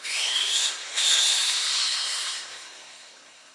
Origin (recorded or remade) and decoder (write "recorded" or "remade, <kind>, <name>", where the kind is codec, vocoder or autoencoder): remade, codec, SNAC